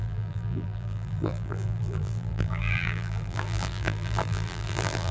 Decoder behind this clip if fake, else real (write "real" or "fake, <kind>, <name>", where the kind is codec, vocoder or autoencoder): fake, vocoder, BigVGAN v2